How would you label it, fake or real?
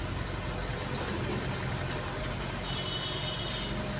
real